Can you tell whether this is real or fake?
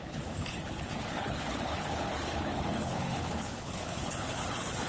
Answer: fake